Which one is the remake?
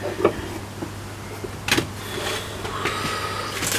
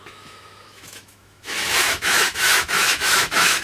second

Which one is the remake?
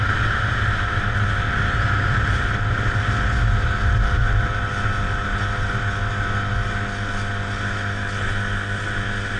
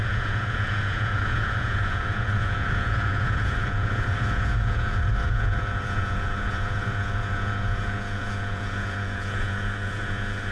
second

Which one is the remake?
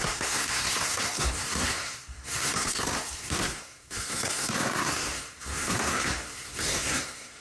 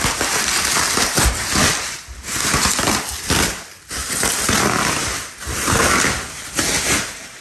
first